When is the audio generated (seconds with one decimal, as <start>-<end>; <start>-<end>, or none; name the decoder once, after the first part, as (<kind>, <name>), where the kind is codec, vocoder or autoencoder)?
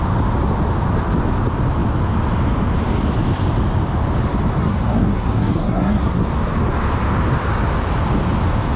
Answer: 4.6-6.1 (codec, SNAC)